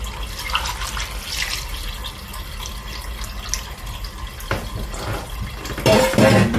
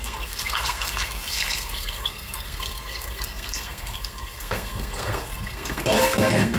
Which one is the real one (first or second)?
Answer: first